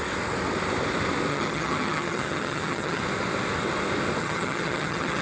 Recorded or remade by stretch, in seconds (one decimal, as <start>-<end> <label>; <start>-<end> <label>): 0.0-1.3 recorded; 1.3-3.0 remade; 3.0-4.2 recorded; 4.2-5.2 remade